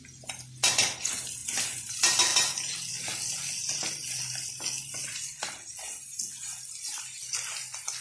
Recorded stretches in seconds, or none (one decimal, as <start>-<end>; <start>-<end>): 0.0-8.0